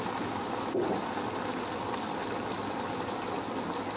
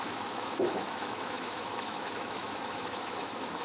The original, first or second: first